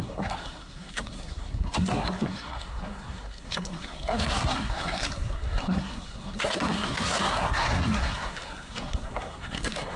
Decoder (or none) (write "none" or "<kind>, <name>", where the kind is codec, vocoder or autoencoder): codec, SNAC